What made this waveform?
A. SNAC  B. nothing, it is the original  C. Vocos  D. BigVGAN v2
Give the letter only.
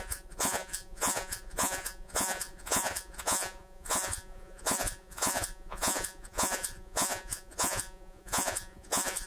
C